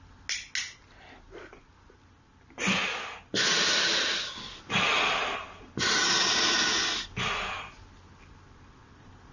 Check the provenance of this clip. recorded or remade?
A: recorded